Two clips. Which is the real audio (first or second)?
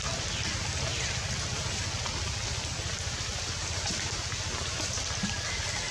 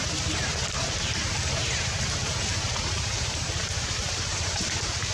first